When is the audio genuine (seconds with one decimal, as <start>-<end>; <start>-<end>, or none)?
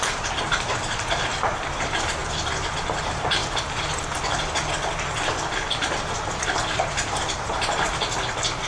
2.2-3.0; 3.4-6.4; 7.9-8.7